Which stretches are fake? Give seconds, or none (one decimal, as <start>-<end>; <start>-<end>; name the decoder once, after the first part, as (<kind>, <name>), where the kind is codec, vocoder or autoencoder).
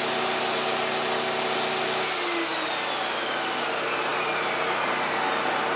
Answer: none